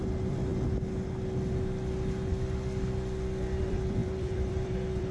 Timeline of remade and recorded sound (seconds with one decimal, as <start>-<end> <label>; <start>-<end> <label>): 0.0-0.5 remade; 0.5-3.6 recorded; 3.6-5.1 remade